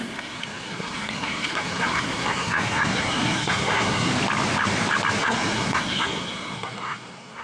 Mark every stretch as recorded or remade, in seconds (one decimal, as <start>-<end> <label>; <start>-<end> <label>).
0.0-4.1 remade; 4.1-5.2 recorded; 5.2-7.4 remade